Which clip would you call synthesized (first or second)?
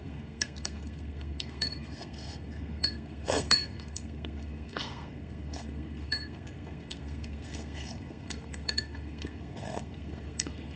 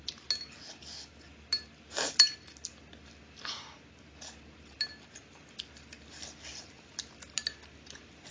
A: first